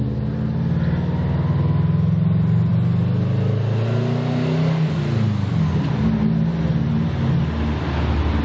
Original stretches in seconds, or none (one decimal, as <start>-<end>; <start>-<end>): 0.0-8.4